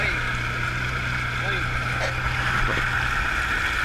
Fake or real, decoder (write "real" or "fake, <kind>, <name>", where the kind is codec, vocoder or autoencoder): real